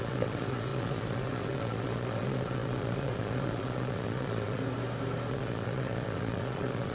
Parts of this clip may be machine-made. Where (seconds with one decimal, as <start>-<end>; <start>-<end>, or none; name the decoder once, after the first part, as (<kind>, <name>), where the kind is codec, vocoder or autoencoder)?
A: 0.0-4.6 (vocoder, Vocos); 5.3-6.9